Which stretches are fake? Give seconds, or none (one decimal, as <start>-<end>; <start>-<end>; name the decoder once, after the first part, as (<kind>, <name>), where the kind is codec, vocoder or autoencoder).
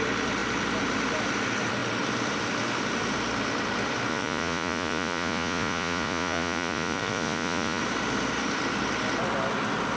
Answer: 4.1-7.8 (vocoder, Vocos)